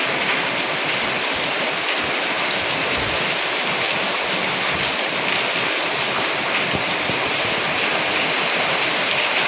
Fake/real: real